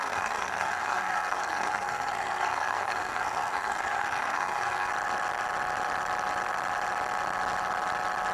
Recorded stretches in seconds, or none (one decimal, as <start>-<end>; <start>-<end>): 4.9-8.3